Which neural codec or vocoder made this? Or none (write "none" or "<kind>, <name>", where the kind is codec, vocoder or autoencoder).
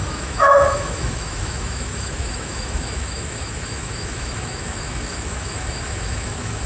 autoencoder, DAC-VAE